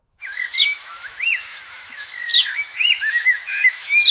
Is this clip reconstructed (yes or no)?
yes